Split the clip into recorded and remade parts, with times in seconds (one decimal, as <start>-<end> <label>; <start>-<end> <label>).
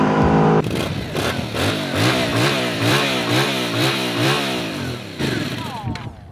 0.0-2.3 recorded; 2.3-5.8 remade; 5.8-6.3 recorded